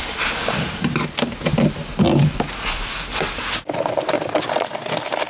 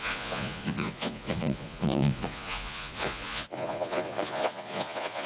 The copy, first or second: second